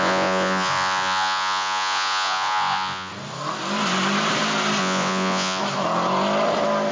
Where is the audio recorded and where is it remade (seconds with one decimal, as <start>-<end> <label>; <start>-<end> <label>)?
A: 0.0-3.1 remade; 3.1-4.8 recorded; 4.8-5.6 remade; 5.6-6.9 recorded